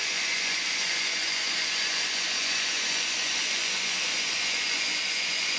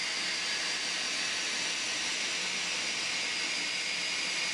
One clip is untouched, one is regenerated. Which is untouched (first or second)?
second